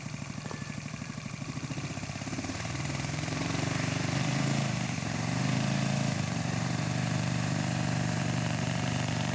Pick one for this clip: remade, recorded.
remade